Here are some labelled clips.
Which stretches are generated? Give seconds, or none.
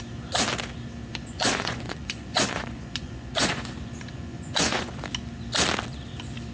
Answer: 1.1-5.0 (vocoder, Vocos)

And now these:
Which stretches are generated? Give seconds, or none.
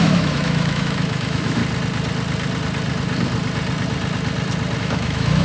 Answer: 0.0-1.6 (autoencoder, DAC-VAE); 4.8-5.4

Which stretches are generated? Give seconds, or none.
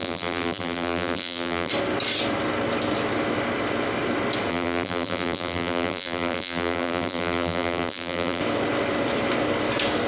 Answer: 0.0-1.7 (vocoder, BigVGAN v2); 4.5-8.4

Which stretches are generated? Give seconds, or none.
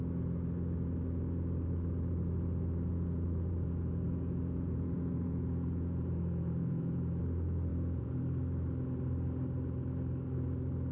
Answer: 2.9-7.2 (vocoder, Vocos); 7.7-8.2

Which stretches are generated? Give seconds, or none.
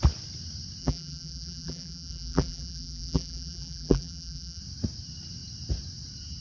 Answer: 0.8-4.6 (vocoder, BigVGAN v2)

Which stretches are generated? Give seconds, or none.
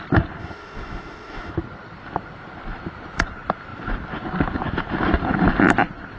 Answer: 0.4-1.5 (autoencoder, DAC-VAE)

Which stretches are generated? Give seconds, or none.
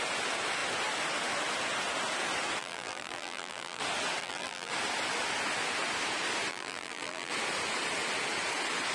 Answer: 2.6-3.8 (vocoder, BigVGAN v2); 4.2-4.7; 6.5-7.3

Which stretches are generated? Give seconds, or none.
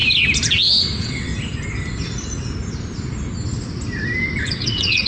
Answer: 0.8-1.3 (vocoder, WaveNeXt); 4.4-5.1